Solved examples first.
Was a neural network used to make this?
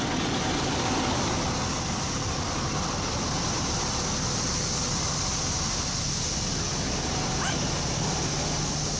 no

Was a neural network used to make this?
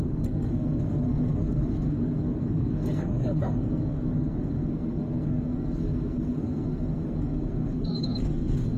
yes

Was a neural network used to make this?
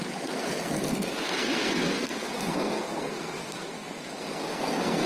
yes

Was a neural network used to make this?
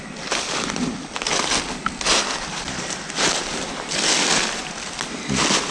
no